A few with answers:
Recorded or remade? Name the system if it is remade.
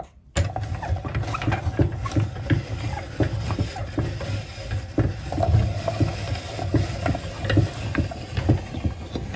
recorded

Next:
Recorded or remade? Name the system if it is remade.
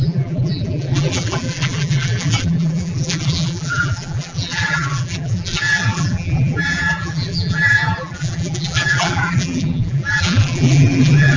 remade, vocoder, BigVGAN v2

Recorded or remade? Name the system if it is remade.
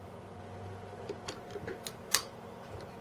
recorded